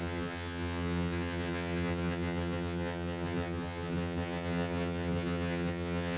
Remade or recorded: remade